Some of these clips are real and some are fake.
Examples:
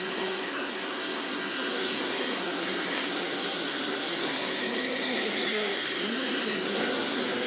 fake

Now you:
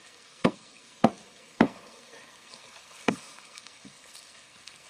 fake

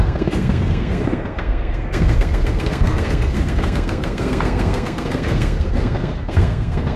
fake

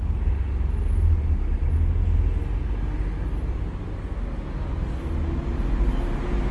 real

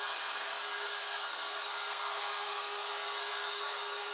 fake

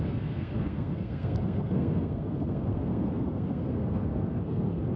fake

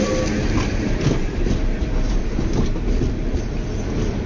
real